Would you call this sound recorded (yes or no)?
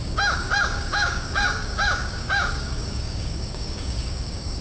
no